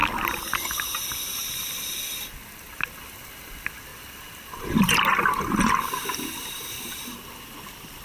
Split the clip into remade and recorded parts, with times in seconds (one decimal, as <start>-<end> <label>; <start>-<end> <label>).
0.0-8.0 recorded